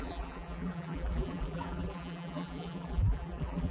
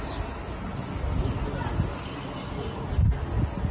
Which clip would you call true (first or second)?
second